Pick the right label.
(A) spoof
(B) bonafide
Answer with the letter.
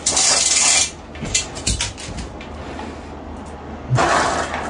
B